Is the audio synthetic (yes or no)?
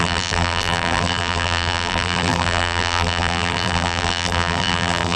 yes